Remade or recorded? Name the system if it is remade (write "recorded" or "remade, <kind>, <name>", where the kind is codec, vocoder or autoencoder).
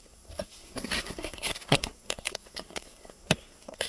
remade, codec, SNAC